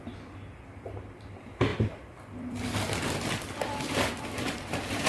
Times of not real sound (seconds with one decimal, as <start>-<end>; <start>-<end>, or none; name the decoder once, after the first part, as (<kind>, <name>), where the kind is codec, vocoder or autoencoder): 1.7-5.1 (vocoder, BigVGAN v2)